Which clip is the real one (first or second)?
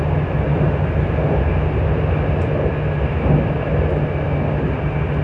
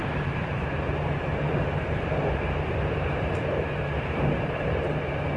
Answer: first